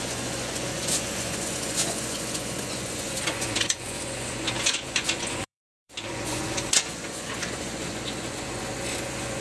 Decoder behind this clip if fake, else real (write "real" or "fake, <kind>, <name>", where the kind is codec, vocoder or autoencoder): fake, vocoder, Vocos